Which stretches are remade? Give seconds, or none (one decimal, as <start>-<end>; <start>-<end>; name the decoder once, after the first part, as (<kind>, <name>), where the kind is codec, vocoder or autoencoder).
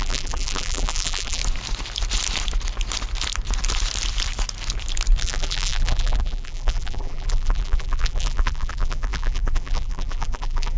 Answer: 0.0-1.4 (vocoder, BigVGAN v2); 5.2-10.8